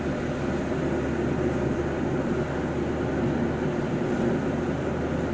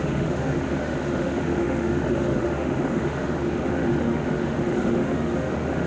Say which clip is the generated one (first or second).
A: second